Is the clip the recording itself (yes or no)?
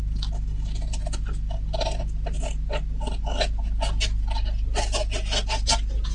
yes